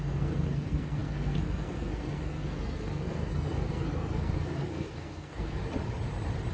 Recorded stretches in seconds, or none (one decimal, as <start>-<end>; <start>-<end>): 5.6-6.5